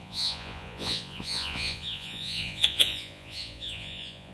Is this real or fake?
fake